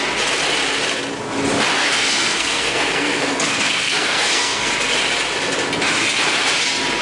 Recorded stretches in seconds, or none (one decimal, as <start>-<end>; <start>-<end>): 0.0-1.8; 4.7-7.0